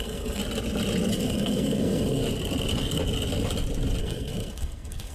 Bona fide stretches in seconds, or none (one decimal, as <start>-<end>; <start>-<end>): 0.4-1.1; 2.2-4.0